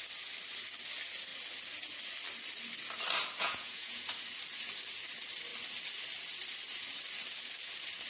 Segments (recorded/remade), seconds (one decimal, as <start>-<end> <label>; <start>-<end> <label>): 0.0-3.4 recorded; 3.4-4.0 remade; 4.0-8.1 recorded